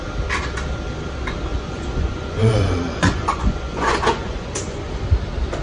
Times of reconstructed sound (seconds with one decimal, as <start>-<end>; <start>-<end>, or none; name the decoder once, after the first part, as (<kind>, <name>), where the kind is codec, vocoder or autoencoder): 1.5-4.9 (vocoder, Vocos)